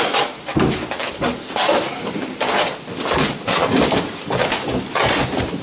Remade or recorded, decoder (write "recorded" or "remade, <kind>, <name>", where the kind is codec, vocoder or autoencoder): remade, vocoder, BigVGAN v2